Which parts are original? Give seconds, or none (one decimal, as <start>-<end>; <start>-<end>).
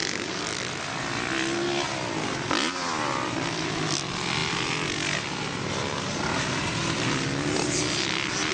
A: 0.0-8.5